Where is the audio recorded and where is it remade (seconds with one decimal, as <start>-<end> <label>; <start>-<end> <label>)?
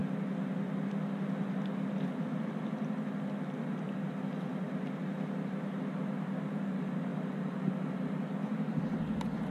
0.0-9.5 recorded